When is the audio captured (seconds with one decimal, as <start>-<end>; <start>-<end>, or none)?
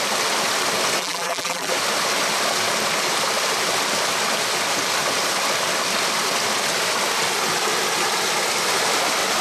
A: 0.0-1.0; 1.7-9.4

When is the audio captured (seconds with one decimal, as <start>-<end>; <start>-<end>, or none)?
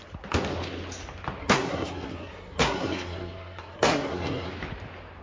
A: 0.0-1.4; 4.5-5.2